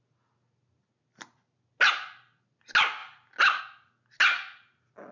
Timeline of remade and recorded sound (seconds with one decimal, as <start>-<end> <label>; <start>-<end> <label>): 0.0-5.1 recorded